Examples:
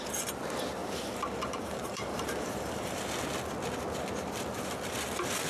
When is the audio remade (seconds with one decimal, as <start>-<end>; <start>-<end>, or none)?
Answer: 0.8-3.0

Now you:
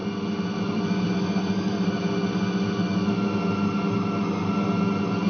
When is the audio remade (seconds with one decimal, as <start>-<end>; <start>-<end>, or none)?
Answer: 0.7-2.2

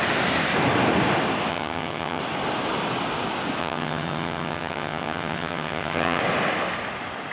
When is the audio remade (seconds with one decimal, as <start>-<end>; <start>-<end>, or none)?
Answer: 1.5-2.2; 3.6-6.2

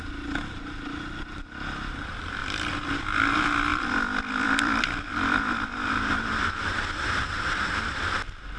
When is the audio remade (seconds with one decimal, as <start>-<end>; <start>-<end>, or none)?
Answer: 2.4-3.0; 3.7-8.1